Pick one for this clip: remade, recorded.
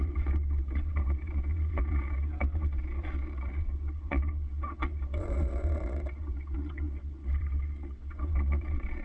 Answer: remade